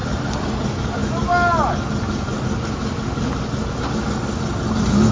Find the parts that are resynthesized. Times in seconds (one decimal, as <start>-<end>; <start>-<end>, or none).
none